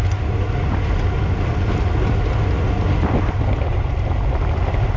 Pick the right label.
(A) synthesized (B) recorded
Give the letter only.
B